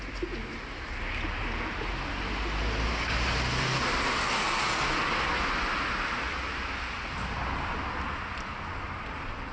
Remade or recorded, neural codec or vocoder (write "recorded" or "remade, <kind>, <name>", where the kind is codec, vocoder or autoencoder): recorded